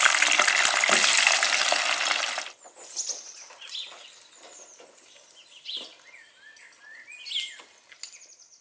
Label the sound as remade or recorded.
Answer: recorded